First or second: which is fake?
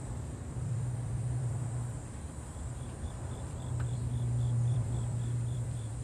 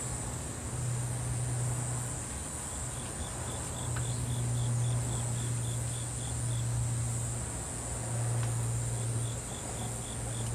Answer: first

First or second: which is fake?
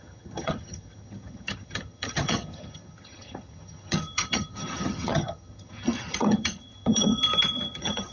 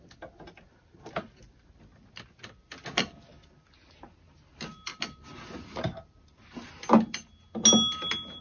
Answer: first